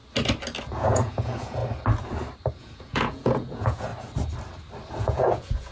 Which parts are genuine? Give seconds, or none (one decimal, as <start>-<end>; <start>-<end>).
0.0-0.7; 1.6-2.6; 3.9-5.0